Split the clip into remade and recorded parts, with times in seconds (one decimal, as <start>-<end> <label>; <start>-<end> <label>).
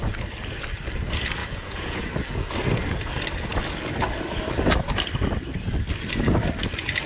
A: 0.0-1.4 recorded; 1.4-2.0 remade; 2.0-7.1 recorded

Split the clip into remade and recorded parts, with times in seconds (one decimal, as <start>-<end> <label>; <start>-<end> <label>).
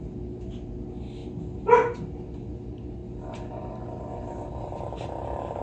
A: 0.0-5.6 recorded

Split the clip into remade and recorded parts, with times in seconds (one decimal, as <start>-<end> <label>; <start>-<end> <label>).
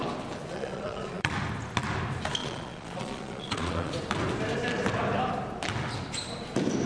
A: 0.0-0.5 recorded; 0.5-1.3 remade; 1.3-2.4 recorded; 2.4-3.9 remade; 3.9-6.9 recorded